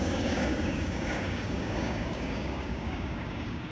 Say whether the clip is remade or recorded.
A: remade